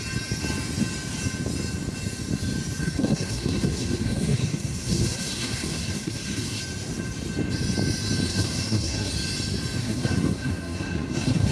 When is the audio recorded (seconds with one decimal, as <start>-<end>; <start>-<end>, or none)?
0.0-2.8; 6.6-8.3; 9.1-9.8